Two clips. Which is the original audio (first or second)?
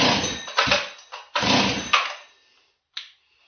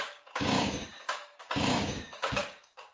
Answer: first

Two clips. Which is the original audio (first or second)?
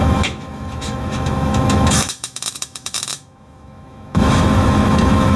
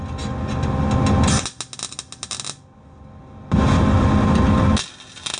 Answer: second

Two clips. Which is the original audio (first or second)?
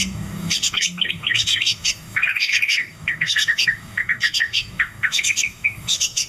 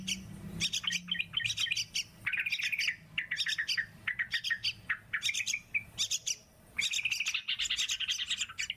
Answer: second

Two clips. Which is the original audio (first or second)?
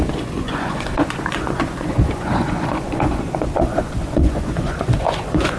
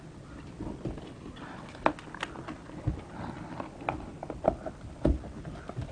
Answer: second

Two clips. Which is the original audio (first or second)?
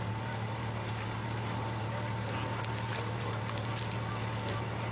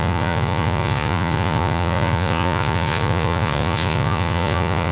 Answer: first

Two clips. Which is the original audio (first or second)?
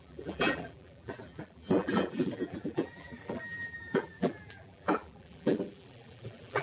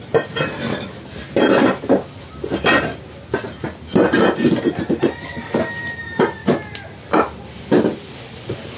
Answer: second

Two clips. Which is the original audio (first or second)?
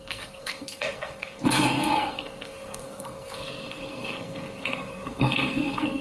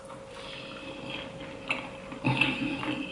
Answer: second